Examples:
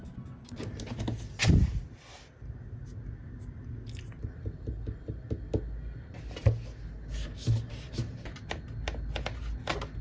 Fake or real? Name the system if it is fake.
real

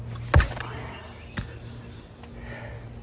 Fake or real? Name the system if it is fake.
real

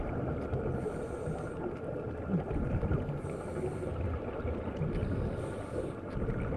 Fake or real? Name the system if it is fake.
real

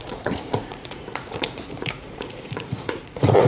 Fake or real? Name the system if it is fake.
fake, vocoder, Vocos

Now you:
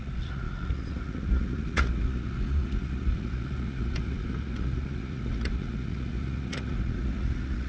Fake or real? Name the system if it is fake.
fake, vocoder, Vocos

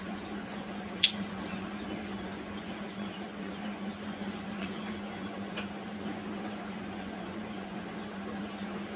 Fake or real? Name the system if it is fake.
fake, vocoder, Vocos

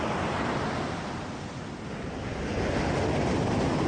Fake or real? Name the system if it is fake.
real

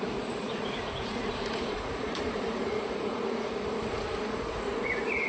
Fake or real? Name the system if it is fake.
fake, vocoder, Vocos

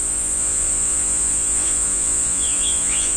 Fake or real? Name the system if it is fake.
fake, vocoder, Vocos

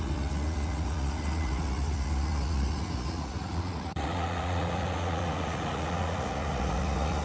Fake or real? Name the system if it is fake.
fake, vocoder, Vocos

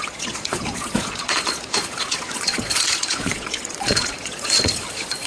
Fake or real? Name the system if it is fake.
fake, vocoder, Vocos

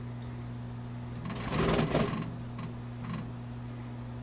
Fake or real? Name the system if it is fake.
real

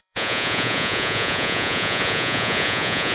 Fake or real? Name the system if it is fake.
fake, vocoder, Vocos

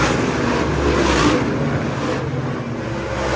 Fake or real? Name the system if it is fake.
real